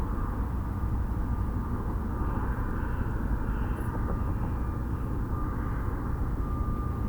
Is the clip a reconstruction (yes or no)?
no